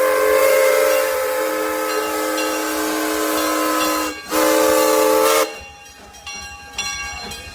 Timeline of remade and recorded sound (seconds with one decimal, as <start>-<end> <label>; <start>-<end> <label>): 0.0-0.4 recorded; 0.4-1.5 remade; 1.5-7.5 recorded